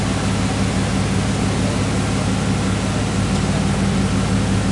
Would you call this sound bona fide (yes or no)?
yes